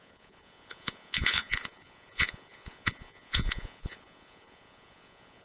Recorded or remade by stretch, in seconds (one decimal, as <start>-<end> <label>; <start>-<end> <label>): 0.0-5.4 remade